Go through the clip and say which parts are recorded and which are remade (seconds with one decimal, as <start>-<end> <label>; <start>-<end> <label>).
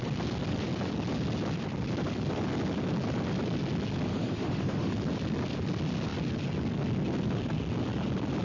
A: 0.0-4.1 recorded; 4.1-4.9 remade; 4.9-8.4 recorded